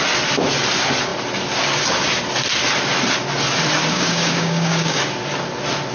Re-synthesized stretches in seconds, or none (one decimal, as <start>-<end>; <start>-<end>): 3.9-5.0